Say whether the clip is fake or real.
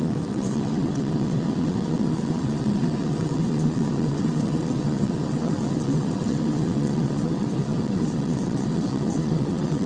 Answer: fake